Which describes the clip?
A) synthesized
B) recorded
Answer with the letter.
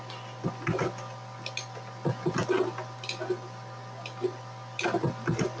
B